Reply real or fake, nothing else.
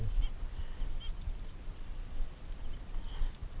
real